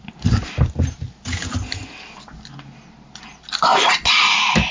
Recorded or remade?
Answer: recorded